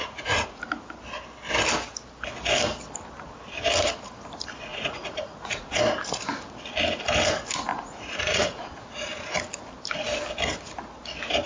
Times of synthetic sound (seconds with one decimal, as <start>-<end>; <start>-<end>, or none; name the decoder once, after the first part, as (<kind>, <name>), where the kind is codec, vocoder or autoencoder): 0.0-0.6 (vocoder, Vocos); 4.7-5.8; 7.7-8.8